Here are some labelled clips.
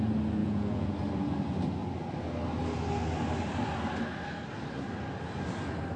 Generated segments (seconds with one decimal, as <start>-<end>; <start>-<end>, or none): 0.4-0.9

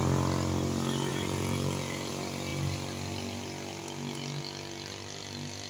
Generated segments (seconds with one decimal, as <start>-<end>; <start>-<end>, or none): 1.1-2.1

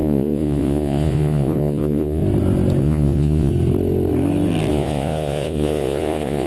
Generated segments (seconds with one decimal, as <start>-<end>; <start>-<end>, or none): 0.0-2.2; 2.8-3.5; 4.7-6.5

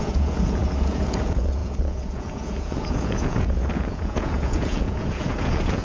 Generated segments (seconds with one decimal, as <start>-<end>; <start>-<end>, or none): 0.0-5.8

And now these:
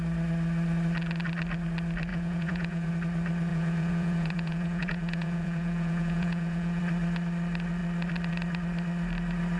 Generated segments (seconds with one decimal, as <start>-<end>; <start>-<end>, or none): 2.1-2.9; 3.5-6.8

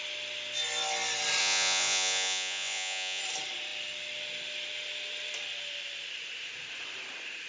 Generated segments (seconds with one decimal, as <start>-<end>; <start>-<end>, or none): 1.4-3.2